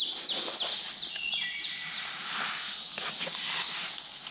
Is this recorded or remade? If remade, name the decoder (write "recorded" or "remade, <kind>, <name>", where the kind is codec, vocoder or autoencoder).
recorded